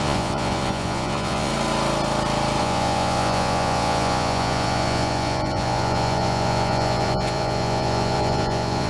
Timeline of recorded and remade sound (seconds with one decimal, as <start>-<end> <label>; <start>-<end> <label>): 0.0-1.5 remade; 1.5-2.6 recorded; 2.6-8.9 remade